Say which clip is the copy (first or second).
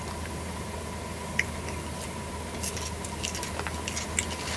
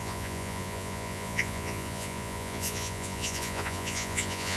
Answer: second